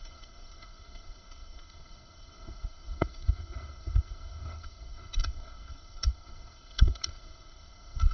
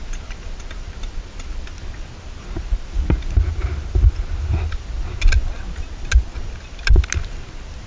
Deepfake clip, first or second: first